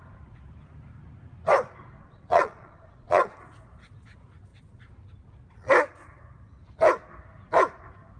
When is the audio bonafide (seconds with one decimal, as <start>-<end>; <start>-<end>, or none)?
0.0-2.0; 3.4-8.2